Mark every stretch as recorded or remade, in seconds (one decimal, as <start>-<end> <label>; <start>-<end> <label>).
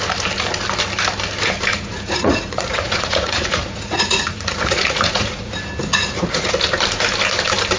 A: 0.0-1.7 recorded; 1.7-5.5 remade; 5.5-5.9 recorded; 5.9-6.5 remade; 6.5-7.8 recorded